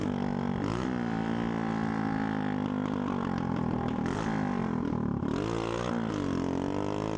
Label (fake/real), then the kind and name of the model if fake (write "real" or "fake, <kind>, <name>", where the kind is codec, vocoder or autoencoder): real